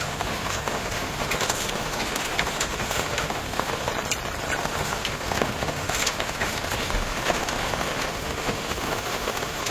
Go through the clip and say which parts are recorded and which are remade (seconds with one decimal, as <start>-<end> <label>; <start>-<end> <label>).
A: 0.0-3.9 remade; 3.9-4.6 recorded; 4.6-9.7 remade